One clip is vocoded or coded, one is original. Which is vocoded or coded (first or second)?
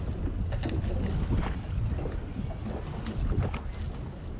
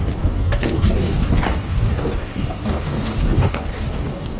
second